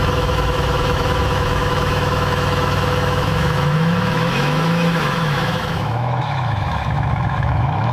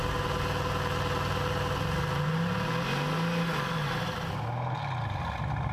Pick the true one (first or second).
second